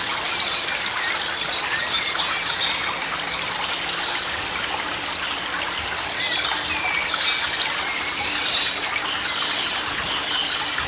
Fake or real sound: real